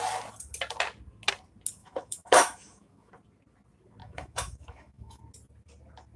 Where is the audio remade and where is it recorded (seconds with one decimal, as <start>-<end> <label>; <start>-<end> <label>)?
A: 0.0-1.8 recorded; 1.8-3.1 remade; 3.1-4.0 recorded; 4.0-5.2 remade; 5.2-6.2 recorded